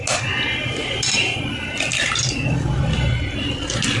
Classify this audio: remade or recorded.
recorded